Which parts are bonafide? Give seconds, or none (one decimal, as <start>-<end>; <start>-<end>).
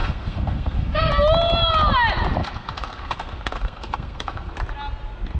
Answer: 1.1-2.4; 4.5-5.4